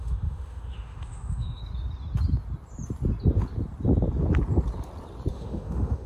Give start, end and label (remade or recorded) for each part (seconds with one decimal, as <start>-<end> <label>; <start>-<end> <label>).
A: 0.0-1.6 remade; 1.6-5.3 recorded; 5.3-6.1 remade